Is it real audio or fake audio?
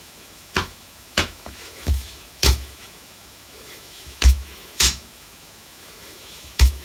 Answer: fake